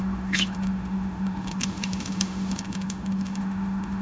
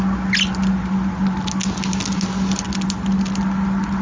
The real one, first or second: second